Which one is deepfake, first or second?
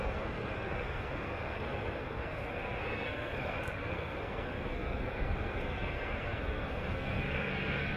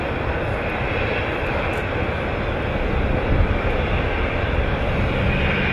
first